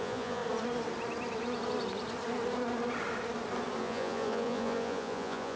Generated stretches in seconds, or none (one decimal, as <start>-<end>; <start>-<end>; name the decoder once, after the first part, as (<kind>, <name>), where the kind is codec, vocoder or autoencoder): 0.0-0.4 (vocoder, Vocos); 3.8-5.6